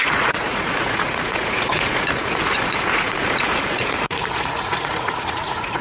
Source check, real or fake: fake